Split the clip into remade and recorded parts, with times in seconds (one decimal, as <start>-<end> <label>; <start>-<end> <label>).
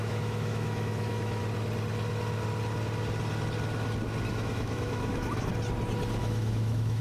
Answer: 0.0-1.4 remade; 1.4-4.3 recorded; 4.3-5.5 remade; 5.5-6.2 recorded; 6.2-7.0 remade